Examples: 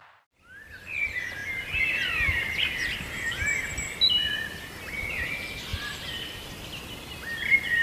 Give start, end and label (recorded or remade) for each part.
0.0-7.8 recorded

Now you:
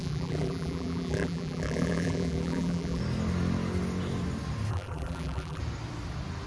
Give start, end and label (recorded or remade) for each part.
0.0-3.0 remade; 3.0-4.7 recorded; 4.7-5.6 remade; 5.6-6.5 recorded

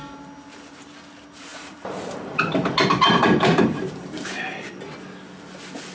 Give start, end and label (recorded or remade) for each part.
0.0-1.5 recorded; 1.5-4.7 remade; 4.7-5.9 recorded

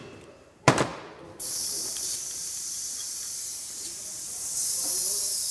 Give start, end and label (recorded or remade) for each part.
0.0-5.5 remade